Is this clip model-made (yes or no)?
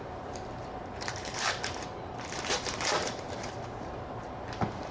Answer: yes